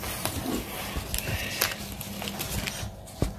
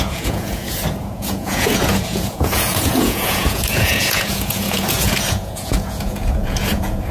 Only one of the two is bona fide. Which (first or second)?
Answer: first